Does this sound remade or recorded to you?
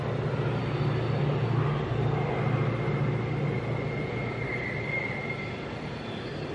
recorded